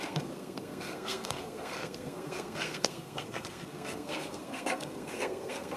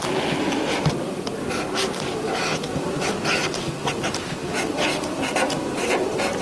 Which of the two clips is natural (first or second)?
second